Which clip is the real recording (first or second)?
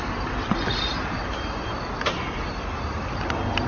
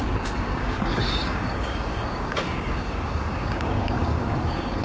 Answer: first